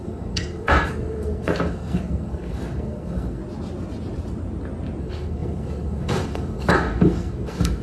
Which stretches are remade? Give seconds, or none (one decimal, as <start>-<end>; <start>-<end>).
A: 0.0-3.4; 5.0-7.8